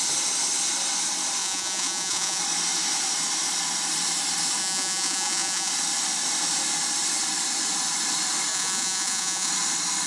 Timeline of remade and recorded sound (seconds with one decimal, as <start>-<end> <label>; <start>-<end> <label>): 0.0-1.4 recorded; 1.4-2.4 remade; 2.4-4.6 recorded; 4.6-5.7 remade; 5.7-8.5 recorded; 8.5-9.5 remade; 9.5-10.1 recorded